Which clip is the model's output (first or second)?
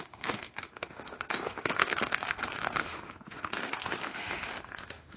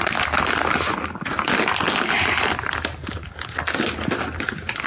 first